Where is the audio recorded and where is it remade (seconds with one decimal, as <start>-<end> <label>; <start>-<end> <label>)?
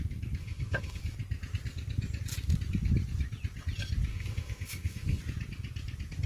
0.0-0.4 recorded; 0.4-1.0 remade; 1.0-4.1 recorded; 4.1-5.2 remade; 5.2-6.3 recorded